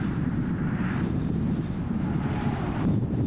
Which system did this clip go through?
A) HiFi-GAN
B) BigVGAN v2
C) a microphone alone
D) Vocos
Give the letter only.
B